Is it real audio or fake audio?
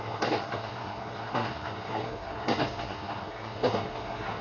fake